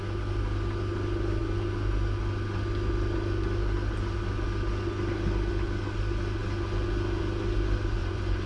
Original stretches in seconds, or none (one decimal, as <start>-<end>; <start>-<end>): 0.0-8.0